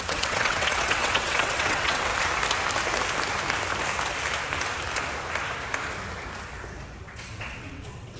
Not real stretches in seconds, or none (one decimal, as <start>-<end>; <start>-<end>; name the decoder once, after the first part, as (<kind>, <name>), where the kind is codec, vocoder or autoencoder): 0.0-2.1 (vocoder, WaveNeXt); 7.0-8.2